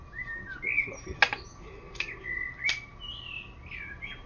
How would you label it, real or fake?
real